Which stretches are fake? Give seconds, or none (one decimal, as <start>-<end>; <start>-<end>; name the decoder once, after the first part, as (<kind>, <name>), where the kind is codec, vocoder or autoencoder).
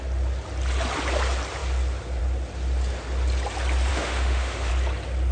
3.9-4.7 (autoencoder, DAC-VAE)